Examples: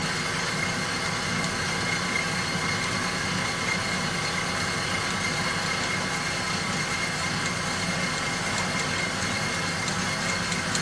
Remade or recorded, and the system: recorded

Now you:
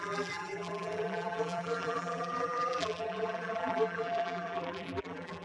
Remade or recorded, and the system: remade, vocoder, BigVGAN v2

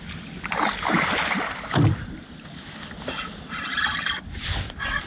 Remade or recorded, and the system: recorded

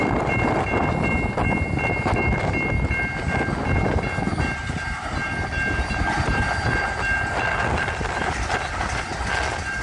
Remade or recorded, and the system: recorded